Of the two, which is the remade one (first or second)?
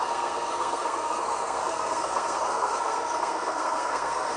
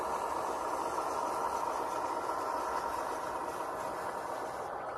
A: first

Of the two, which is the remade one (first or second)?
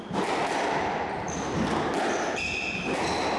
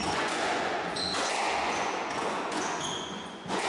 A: second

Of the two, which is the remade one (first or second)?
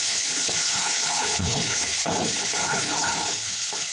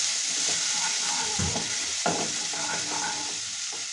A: first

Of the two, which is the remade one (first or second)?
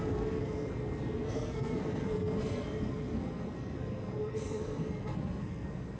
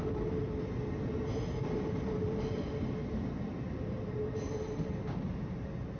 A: first